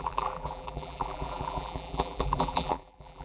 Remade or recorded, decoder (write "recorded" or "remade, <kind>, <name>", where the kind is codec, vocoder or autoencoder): remade, vocoder, BigVGAN v2